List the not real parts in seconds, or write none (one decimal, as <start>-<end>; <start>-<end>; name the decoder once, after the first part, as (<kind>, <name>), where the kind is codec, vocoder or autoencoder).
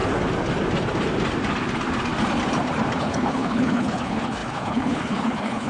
3.0-5.7 (codec, HILCodec)